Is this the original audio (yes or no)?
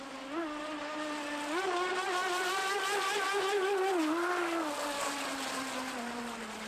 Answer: yes